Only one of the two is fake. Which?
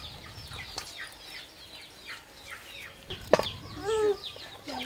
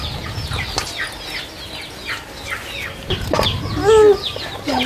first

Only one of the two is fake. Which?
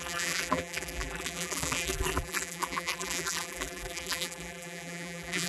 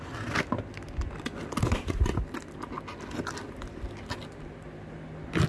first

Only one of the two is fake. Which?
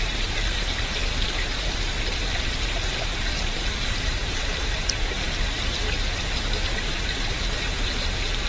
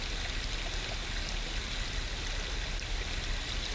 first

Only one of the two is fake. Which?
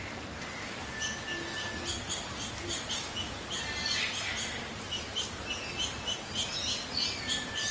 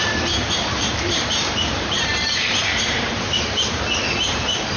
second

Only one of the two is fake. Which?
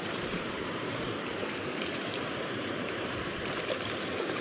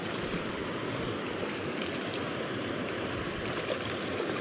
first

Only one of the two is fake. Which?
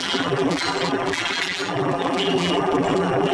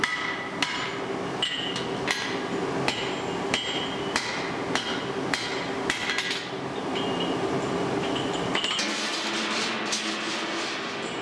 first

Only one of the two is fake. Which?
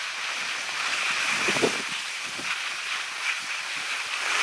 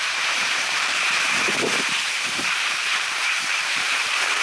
second